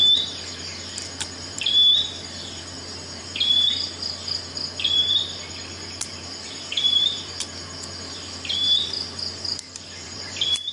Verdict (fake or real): fake